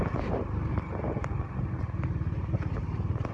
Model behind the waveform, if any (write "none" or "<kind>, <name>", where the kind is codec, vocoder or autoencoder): none